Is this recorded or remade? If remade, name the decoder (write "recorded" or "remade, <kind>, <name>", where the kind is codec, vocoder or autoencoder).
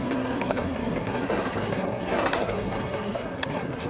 remade, codec, SNAC